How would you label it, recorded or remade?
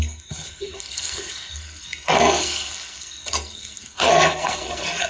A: remade